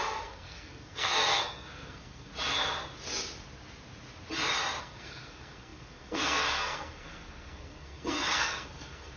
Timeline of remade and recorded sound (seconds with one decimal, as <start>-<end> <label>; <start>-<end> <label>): 0.0-2.3 remade; 2.3-4.8 recorded; 4.8-9.2 remade